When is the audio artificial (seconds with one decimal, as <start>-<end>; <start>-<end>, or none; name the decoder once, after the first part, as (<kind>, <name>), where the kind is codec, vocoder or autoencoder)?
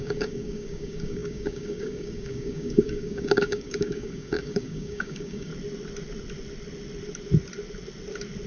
0.0-5.5 (codec, DAC)